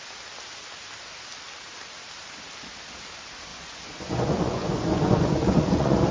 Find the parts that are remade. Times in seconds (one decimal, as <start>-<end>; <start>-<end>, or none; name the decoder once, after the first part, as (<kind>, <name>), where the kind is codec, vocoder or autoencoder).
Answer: 3.5-6.1 (vocoder, Vocos)